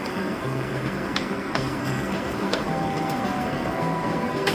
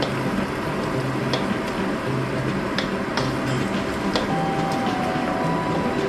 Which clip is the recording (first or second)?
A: second